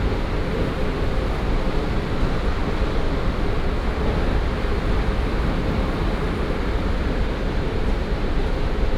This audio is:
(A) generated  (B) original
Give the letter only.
A